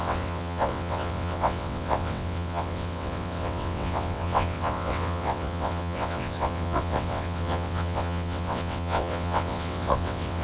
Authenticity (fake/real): fake